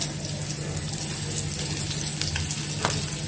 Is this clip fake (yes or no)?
no